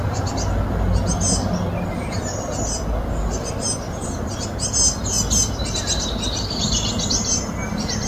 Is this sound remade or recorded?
recorded